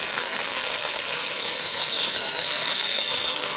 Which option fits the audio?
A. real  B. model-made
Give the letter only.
B